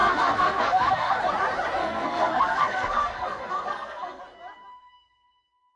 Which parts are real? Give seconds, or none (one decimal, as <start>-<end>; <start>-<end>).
1.2-1.8; 4.2-5.8